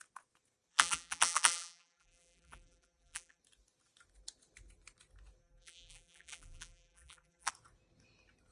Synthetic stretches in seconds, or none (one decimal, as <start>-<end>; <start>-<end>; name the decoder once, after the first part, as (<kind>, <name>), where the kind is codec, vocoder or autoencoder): 0.7-3.4 (vocoder, BigVGAN v2); 5.4-7.5